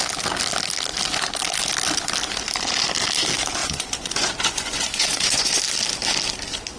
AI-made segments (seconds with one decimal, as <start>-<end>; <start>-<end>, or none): 3.6-5.6